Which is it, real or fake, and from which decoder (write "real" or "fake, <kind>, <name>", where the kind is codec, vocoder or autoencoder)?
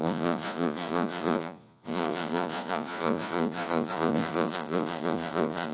fake, vocoder, Vocos